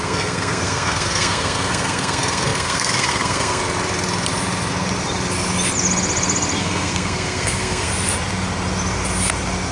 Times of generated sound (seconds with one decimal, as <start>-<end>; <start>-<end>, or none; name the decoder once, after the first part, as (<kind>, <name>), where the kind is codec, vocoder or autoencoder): 0.0-3.6 (codec, SNAC); 6.6-7.9